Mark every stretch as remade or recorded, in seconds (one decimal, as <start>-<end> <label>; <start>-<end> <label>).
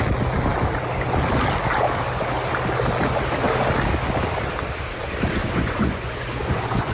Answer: 0.0-5.4 recorded; 5.4-6.9 remade